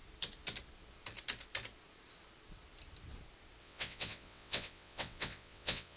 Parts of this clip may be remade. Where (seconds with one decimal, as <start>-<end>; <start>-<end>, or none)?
3.6-6.0